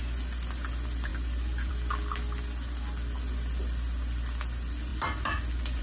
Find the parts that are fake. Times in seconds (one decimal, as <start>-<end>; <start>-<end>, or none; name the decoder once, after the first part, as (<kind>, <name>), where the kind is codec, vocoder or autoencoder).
none